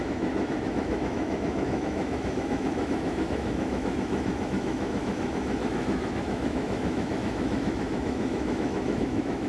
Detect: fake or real fake